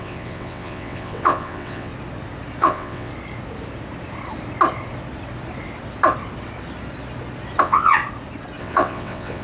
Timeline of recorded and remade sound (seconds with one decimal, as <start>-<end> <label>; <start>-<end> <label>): 0.0-1.9 remade; 1.9-2.6 recorded; 2.6-3.1 remade; 3.1-7.6 recorded; 7.6-8.0 remade; 8.0-8.6 recorded; 8.6-9.4 remade